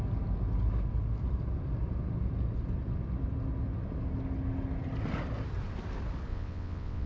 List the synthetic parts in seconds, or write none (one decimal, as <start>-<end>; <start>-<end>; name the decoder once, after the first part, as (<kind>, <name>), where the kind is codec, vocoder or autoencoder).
6.3-7.1 (vocoder, WaveNeXt)